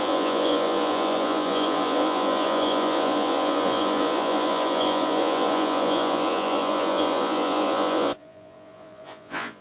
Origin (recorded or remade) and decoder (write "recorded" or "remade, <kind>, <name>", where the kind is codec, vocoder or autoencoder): remade, vocoder, Vocos